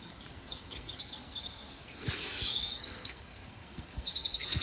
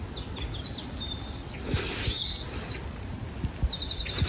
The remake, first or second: first